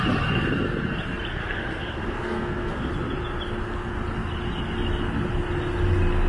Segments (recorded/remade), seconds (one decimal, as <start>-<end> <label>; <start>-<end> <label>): 0.0-1.4 recorded; 1.4-2.9 remade; 2.9-6.3 recorded